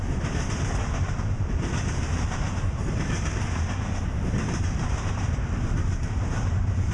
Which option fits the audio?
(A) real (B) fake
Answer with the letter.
B